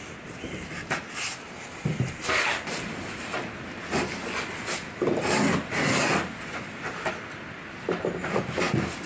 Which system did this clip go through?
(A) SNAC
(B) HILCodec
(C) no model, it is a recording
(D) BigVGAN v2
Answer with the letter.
C